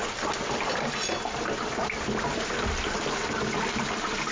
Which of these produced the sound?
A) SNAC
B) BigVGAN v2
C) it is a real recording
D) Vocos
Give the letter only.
C